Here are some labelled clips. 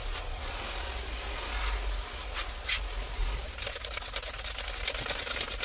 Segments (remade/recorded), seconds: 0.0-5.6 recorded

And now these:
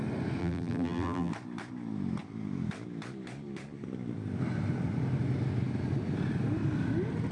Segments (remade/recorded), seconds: 0.0-0.4 recorded; 0.4-1.3 remade; 1.3-7.3 recorded

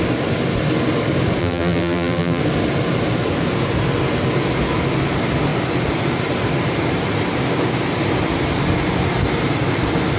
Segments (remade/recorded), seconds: 0.0-1.4 recorded; 1.4-2.4 remade; 2.4-10.2 recorded

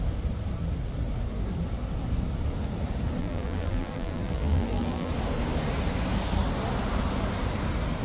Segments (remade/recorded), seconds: 0.0-3.2 recorded; 3.2-5.1 remade; 5.1-8.0 recorded